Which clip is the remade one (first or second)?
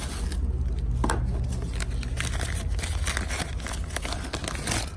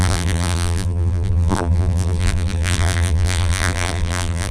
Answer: second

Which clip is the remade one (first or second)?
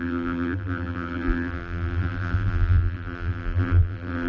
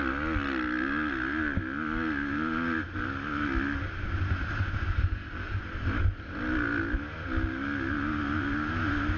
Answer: first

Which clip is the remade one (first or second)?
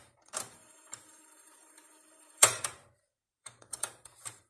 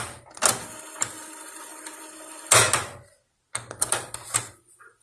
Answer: first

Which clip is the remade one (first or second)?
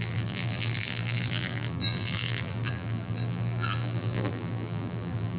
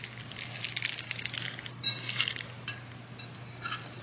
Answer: first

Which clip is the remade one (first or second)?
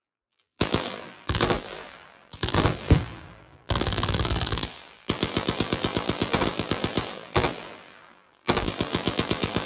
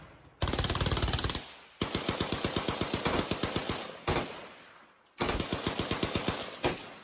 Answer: first